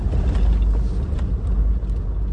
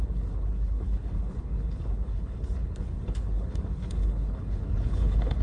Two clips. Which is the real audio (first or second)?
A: first